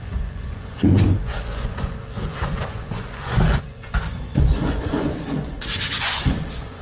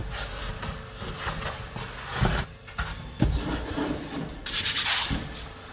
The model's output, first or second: first